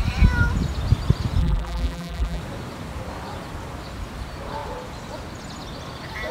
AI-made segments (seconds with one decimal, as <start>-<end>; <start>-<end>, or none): 1.4-2.4